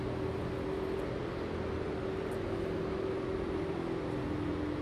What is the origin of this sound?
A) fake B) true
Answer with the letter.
B